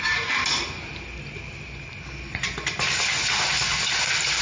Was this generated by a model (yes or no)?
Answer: no